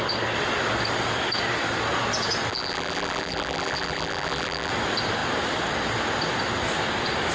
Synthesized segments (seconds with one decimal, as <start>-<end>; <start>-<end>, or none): 2.5-4.7